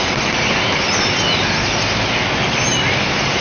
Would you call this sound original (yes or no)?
yes